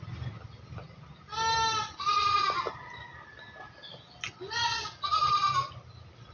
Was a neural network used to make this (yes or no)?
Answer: no